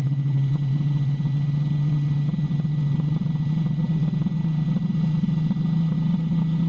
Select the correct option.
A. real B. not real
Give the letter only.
A